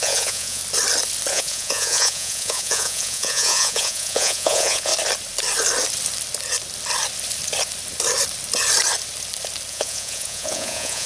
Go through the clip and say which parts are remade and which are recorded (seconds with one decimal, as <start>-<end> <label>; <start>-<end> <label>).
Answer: 0.0-0.6 remade; 0.6-1.3 recorded; 1.3-4.9 remade; 4.9-9.7 recorded; 9.7-11.1 remade